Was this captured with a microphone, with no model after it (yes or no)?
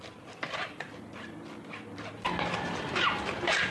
yes